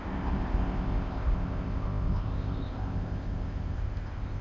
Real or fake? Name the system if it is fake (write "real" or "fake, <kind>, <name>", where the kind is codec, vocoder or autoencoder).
fake, codec, ZipCodec